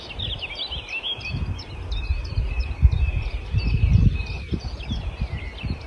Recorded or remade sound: recorded